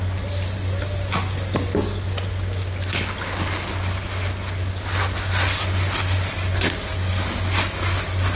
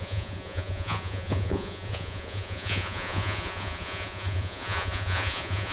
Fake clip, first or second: second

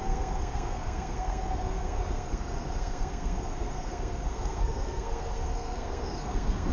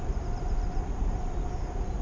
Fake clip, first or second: first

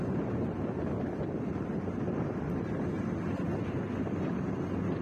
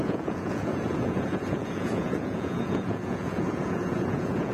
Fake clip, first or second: second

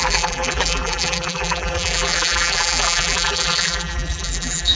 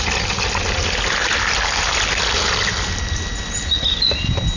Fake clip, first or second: first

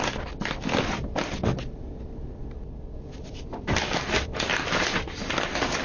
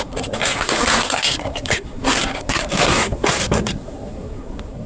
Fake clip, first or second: second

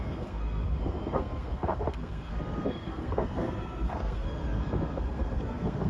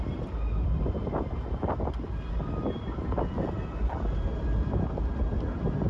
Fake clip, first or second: first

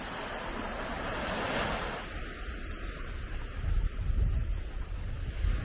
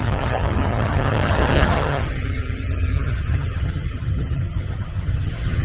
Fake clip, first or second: second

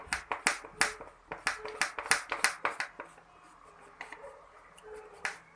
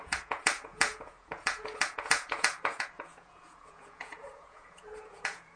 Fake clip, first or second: second